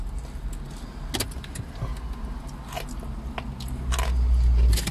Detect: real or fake real